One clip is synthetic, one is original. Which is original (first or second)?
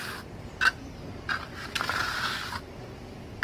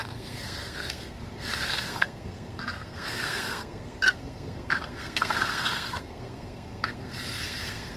first